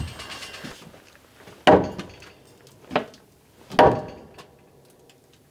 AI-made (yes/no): no